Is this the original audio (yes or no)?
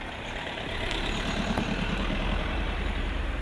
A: no